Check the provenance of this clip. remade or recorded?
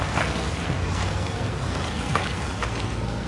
remade